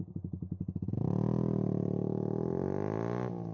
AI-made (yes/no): no